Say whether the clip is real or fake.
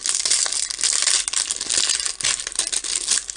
real